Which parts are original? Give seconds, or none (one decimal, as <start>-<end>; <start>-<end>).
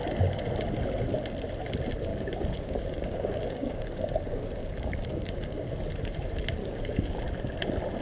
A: 0.0-2.1; 5.7-6.6; 7.2-8.0